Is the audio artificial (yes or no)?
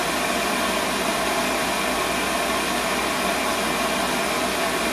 no